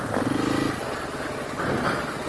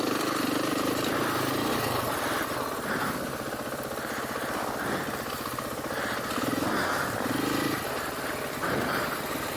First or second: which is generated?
second